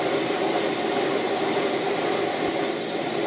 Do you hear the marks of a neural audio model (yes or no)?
no